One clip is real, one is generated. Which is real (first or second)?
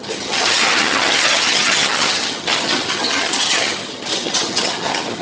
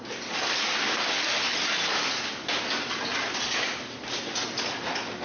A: second